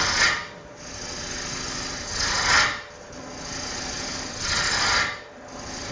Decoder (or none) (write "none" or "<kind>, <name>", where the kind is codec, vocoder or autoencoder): none